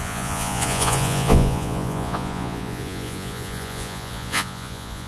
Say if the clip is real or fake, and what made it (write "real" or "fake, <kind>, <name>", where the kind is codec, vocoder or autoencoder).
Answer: fake, vocoder, Vocos